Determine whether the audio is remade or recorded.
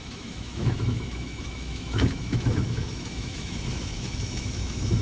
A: remade